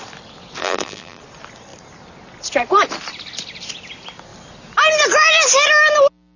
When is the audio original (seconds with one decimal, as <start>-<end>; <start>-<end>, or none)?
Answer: 0.0-0.6; 1.2-6.4

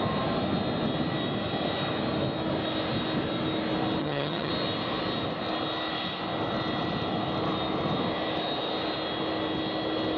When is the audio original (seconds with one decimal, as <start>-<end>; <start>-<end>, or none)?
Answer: 0.0-4.0; 4.5-10.2

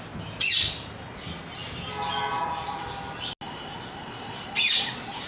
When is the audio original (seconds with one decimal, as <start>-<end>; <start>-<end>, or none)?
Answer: 0.0-5.3

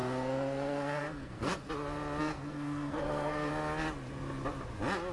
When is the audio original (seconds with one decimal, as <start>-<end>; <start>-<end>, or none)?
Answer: 1.7-2.3; 3.5-5.1

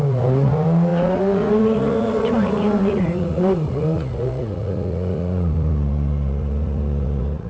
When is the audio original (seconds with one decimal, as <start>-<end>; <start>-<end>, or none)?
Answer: none

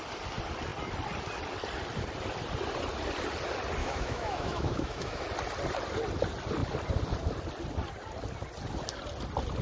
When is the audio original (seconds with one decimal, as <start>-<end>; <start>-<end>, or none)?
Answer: 0.0-3.8; 5.2-9.6